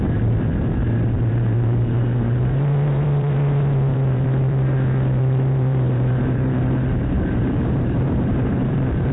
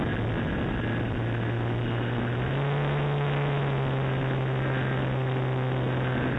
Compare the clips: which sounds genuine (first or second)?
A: second